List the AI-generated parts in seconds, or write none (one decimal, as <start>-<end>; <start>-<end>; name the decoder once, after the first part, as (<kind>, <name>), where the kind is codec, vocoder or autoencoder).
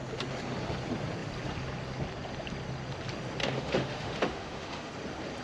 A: 3.4-4.9 (autoencoder, DAC-VAE)